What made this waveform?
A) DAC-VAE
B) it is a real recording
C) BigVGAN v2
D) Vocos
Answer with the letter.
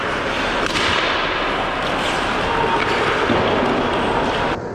C